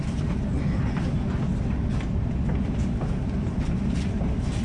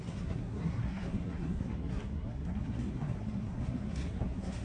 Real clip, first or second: first